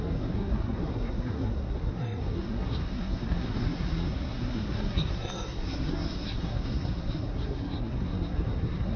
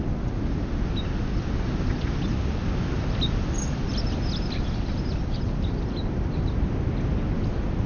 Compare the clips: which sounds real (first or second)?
second